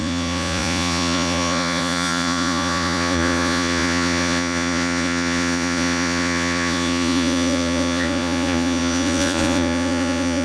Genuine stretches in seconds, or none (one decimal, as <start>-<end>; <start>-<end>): none